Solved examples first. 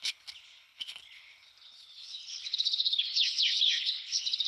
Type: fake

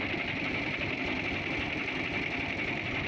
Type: fake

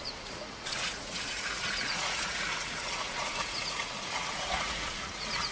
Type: fake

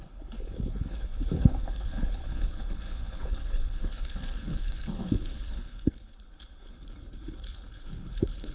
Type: fake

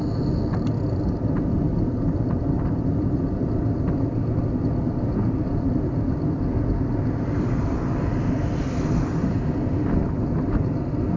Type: real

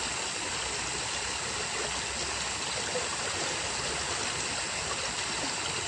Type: real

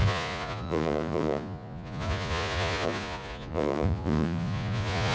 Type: fake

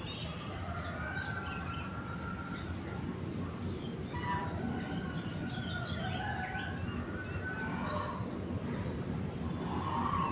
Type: real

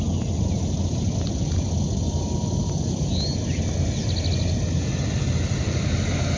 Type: real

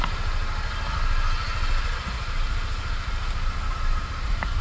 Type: real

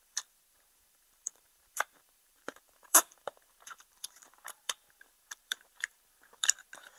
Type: fake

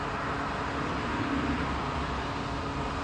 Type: real